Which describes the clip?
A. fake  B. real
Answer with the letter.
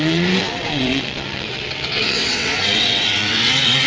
A